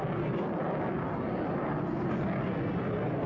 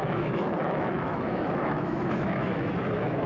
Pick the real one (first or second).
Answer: first